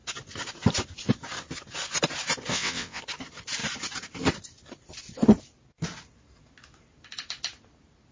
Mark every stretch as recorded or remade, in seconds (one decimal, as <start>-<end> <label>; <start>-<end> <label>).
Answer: 0.0-2.5 recorded; 2.5-3.0 remade; 3.0-8.1 recorded